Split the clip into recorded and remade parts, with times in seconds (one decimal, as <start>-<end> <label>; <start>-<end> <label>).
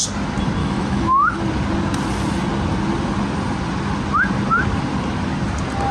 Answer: 0.0-0.6 recorded; 0.6-1.4 remade; 1.4-5.9 recorded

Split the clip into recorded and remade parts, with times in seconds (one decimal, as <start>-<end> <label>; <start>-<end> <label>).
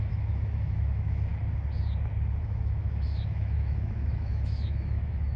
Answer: 0.0-1.3 remade; 1.3-2.4 recorded; 2.4-5.4 remade